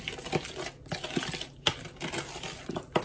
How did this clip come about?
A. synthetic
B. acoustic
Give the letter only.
B